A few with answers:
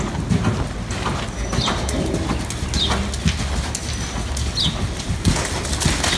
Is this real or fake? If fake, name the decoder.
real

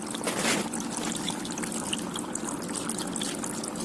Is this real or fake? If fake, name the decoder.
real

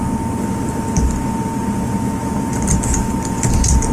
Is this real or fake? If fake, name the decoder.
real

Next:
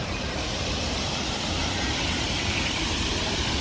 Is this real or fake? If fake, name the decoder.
real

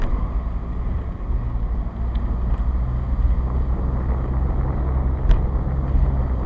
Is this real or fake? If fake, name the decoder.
real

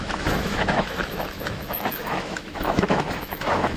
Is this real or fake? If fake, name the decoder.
fake, autoencoder, DAC-VAE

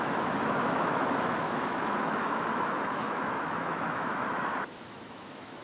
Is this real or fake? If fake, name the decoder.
fake, autoencoder, DAC-VAE